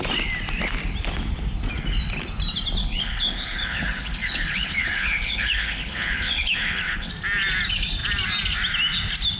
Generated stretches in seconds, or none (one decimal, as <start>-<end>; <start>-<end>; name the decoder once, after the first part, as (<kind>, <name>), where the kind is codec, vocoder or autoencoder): 2.8-7.1 (codec, HILCodec)